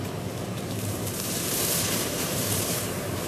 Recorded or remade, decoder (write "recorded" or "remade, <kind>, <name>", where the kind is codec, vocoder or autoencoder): remade, vocoder, BigVGAN v2